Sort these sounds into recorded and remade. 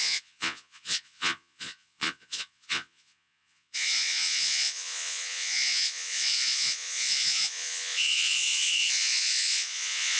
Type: remade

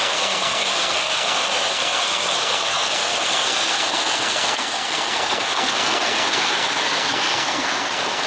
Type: remade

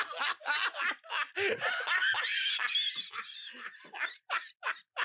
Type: recorded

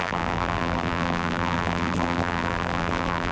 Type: remade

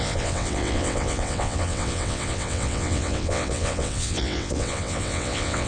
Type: remade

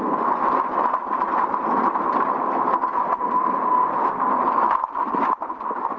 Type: recorded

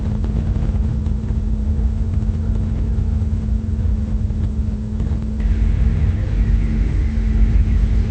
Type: remade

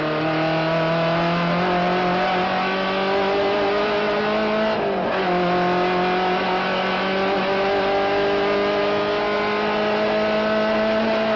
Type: recorded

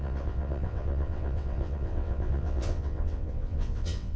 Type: remade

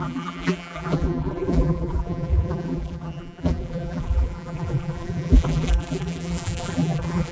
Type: remade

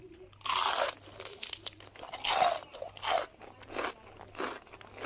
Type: recorded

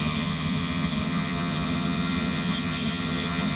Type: remade